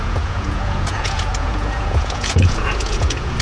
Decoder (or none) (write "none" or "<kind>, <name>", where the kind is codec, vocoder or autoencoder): vocoder, Vocos